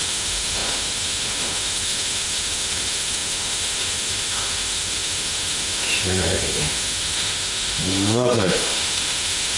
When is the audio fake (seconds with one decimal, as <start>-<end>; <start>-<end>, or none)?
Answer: 0.0-9.6